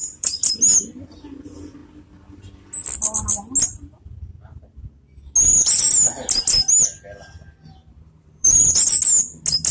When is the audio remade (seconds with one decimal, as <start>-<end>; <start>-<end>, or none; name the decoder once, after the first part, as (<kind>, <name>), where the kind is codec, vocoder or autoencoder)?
0.0-0.5 (vocoder, BigVGAN v2); 7.8-8.8